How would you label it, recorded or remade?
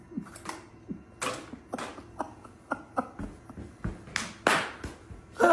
recorded